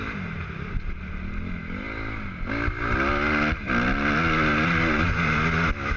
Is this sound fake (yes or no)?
no